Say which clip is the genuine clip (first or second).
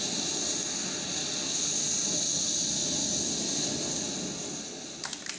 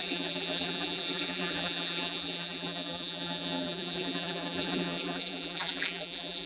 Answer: first